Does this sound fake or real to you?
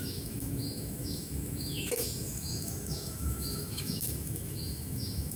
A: fake